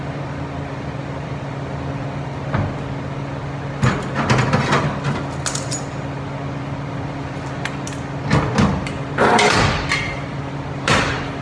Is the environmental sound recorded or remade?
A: recorded